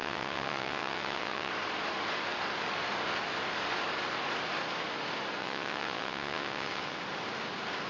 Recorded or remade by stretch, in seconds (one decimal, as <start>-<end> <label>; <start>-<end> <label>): 0.0-1.5 remade; 1.5-5.4 recorded; 5.4-7.0 remade; 7.0-7.9 recorded

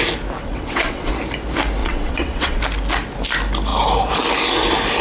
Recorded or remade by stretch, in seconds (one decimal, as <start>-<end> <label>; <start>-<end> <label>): 0.0-0.4 recorded; 0.4-1.1 remade; 1.1-1.8 recorded; 1.8-2.6 remade; 2.6-5.0 recorded